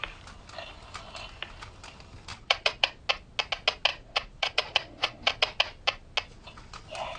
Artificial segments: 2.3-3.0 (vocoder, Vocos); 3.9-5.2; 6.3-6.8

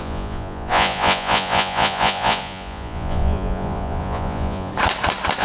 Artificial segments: 0.0-4.7 (vocoder, Vocos)

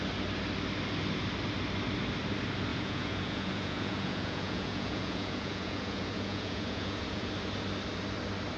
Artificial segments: 2.7-7.3 (vocoder, Vocos)

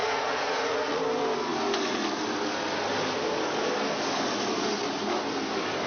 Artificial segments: 0.0-1.0 (vocoder, Vocos)

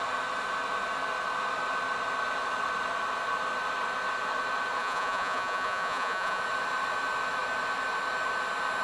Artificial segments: 4.8-6.4 (vocoder, Vocos)

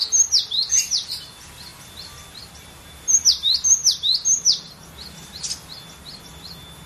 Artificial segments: none

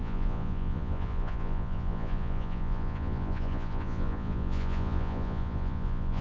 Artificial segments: 0.0-6.2 (vocoder, Vocos)